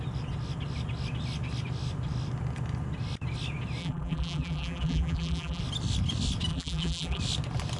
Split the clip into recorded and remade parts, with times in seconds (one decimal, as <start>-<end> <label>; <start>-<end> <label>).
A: 0.0-3.8 recorded; 3.8-5.6 remade; 5.6-6.5 recorded; 6.5-7.2 remade; 7.2-7.8 recorded